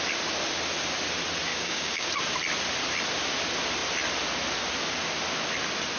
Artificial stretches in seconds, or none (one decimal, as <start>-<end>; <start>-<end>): 1.5-2.1